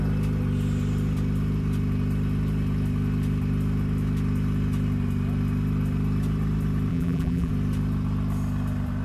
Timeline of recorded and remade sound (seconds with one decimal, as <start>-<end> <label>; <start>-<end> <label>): 0.0-6.9 recorded; 6.9-7.5 remade; 7.5-9.0 recorded